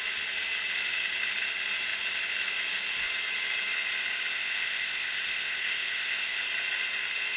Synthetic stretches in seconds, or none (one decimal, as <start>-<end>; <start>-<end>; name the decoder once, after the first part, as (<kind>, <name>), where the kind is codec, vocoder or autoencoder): 4.3-6.4 (codec, ZipCodec)